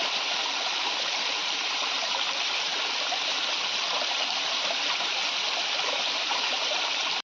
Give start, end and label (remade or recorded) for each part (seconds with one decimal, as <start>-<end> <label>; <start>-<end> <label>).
0.0-2.7 remade; 2.7-6.2 recorded; 6.2-7.2 remade